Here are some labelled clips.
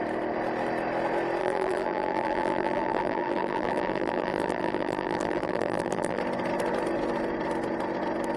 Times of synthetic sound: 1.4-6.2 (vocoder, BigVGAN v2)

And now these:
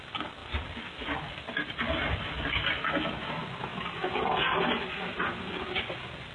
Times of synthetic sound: 0.4-2.8 (vocoder, BigVGAN v2); 3.7-4.6

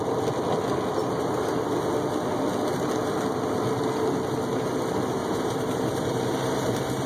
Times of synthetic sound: 1.0-1.6 (vocoder, BigVGAN v2); 5.2-7.1

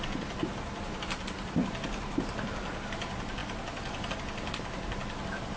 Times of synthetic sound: none

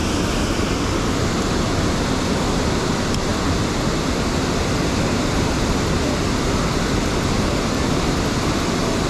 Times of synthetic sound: 3.3-6.9 (vocoder, BigVGAN v2)